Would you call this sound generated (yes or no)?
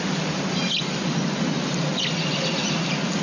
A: no